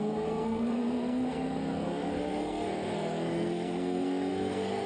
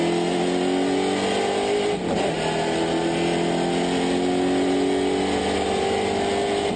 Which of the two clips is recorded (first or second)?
second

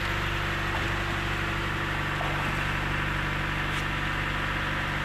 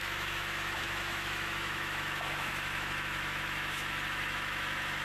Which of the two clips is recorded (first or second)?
first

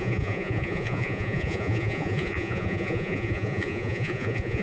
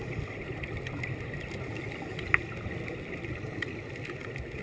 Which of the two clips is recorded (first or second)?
second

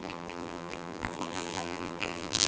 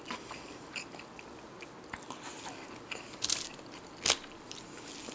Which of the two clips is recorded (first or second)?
second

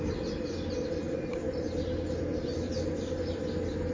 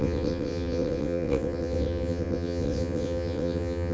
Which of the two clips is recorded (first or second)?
first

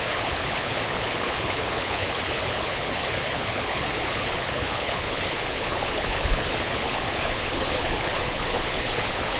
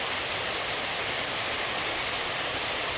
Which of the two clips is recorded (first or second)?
second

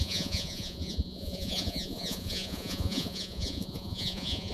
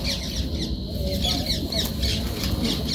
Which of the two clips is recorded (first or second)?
second